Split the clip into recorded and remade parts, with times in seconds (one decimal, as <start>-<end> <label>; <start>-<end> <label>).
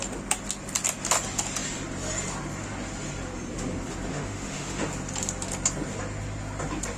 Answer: 0.0-4.1 recorded; 4.1-4.8 remade; 4.8-7.0 recorded